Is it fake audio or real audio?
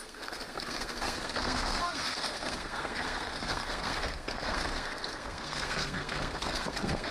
fake